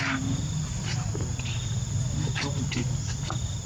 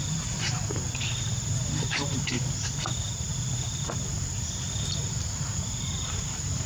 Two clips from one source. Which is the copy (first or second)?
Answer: second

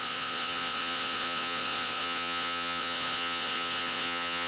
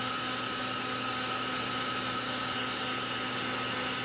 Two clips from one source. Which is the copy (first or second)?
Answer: first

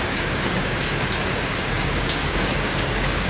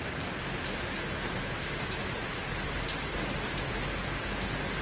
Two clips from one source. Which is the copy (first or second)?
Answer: first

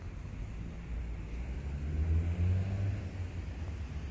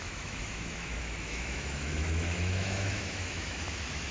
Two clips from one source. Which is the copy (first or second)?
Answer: second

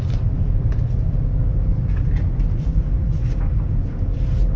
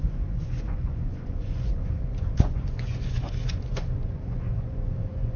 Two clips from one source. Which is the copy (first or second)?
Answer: second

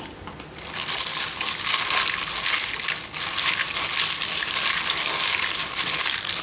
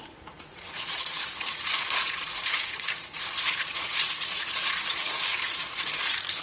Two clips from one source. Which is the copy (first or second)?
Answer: second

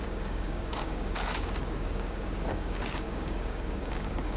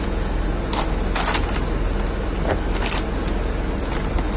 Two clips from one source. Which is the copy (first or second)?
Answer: first